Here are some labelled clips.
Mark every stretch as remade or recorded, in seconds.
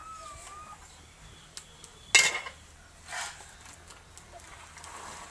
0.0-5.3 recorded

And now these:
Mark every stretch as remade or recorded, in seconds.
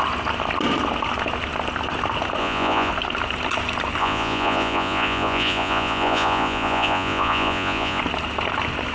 0.0-2.4 recorded; 2.4-2.9 remade; 2.9-4.0 recorded; 4.0-8.0 remade; 8.0-8.9 recorded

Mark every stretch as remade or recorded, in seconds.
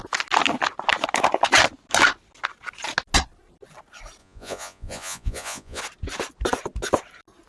0.0-4.2 recorded; 4.2-5.8 remade; 5.8-7.5 recorded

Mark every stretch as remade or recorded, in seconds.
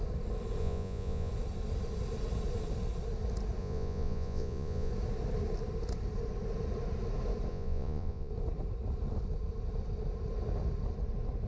0.0-0.6 recorded; 0.6-1.3 remade; 1.3-3.6 recorded; 3.6-4.9 remade; 4.9-7.5 recorded; 7.5-8.3 remade; 8.3-11.5 recorded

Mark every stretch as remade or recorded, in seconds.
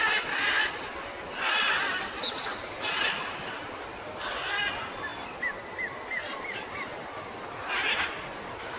0.0-8.8 recorded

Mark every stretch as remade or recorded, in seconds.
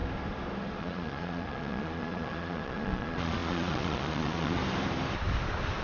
0.0-0.8 recorded; 0.8-4.6 remade; 4.6-5.8 recorded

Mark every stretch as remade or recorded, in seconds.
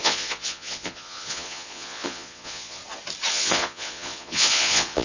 0.0-2.8 remade; 2.8-3.3 recorded; 3.3-5.0 remade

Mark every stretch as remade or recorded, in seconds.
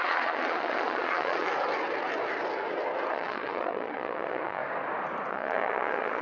0.0-1.5 remade; 1.5-3.1 recorded; 3.1-4.6 remade; 4.6-5.3 recorded; 5.3-6.2 remade